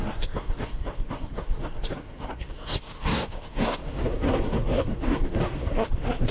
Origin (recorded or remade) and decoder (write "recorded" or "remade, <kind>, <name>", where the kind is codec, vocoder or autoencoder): remade, codec, SNAC